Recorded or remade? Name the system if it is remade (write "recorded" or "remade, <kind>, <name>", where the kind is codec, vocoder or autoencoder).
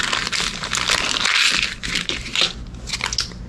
recorded